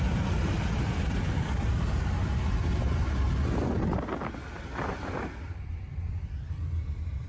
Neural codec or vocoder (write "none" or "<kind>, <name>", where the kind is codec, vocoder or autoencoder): none